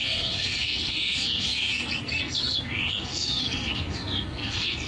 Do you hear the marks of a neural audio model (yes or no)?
yes